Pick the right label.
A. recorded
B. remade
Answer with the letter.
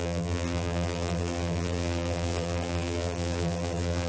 B